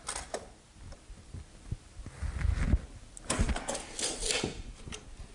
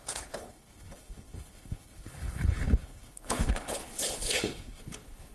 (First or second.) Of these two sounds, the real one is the first